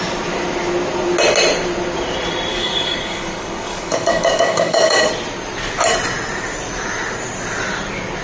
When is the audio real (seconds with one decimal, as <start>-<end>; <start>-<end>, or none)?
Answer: 0.0-2.5; 5.1-8.2